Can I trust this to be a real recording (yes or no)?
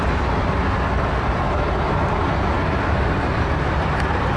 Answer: yes